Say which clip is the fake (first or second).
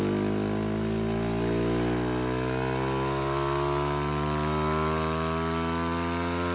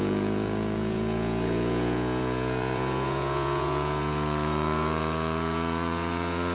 second